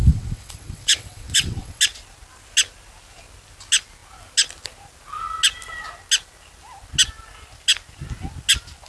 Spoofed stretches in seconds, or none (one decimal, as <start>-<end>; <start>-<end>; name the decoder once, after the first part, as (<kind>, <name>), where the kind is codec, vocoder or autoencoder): 0.0-1.8 (vocoder, WaveNeXt)